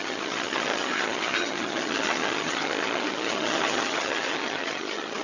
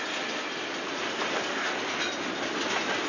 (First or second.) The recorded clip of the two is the second